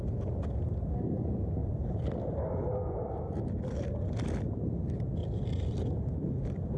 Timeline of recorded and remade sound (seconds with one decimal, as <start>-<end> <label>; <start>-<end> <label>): 0.0-1.6 recorded; 1.6-3.1 remade; 3.1-5.2 recorded; 5.2-5.9 remade; 5.9-6.8 recorded